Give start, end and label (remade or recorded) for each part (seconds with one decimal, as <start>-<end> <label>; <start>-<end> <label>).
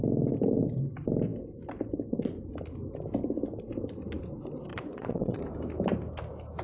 0.0-4.7 recorded; 4.7-5.4 remade; 5.4-6.6 recorded